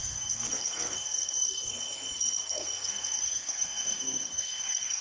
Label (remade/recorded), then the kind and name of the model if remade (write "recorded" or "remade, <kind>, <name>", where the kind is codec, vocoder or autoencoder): remade, codec, SNAC